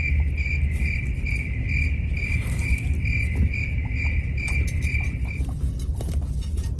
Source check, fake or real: real